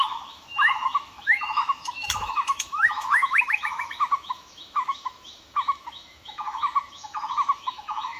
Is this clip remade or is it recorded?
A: remade